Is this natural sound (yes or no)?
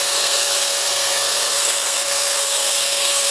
no